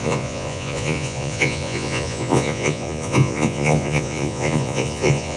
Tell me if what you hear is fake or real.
fake